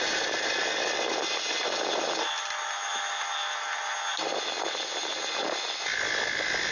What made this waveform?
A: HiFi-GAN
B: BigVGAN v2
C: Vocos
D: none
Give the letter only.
D